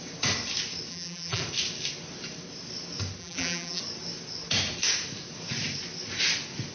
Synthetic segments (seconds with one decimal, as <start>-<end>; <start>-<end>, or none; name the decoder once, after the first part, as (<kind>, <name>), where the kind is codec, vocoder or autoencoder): 0.9-1.4 (vocoder, BigVGAN v2); 3.2-3.8